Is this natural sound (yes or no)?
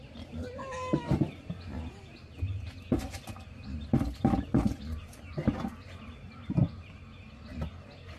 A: yes